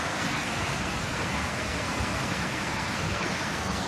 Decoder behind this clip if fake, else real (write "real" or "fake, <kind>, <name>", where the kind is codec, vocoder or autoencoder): fake, codec, SNAC